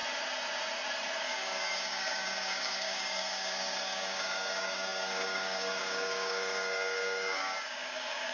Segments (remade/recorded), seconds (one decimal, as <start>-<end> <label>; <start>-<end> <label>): 0.0-1.2 recorded; 1.2-8.3 remade